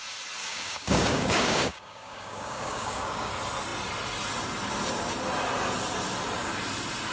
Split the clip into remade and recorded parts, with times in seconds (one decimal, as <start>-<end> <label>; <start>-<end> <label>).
0.0-0.4 recorded; 0.4-3.3 remade; 3.3-7.1 recorded